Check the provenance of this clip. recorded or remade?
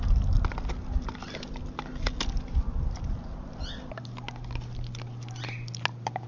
recorded